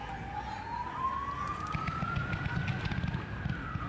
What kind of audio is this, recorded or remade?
recorded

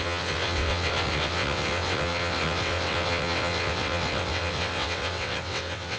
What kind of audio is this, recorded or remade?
remade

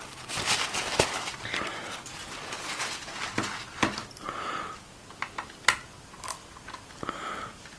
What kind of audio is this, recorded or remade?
recorded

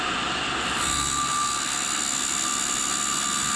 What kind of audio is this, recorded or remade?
recorded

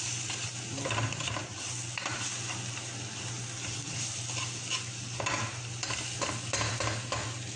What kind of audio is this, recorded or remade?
recorded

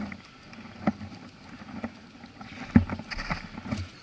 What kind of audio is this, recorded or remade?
recorded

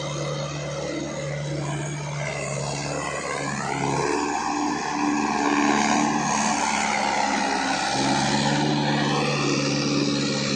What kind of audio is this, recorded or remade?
recorded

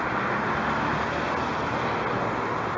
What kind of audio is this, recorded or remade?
recorded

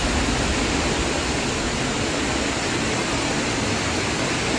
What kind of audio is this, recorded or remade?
recorded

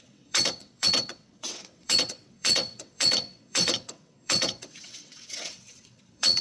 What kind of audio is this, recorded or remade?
remade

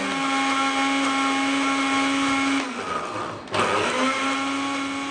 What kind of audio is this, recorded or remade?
recorded